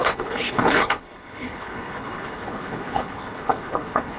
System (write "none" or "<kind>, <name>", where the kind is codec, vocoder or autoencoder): codec, HILCodec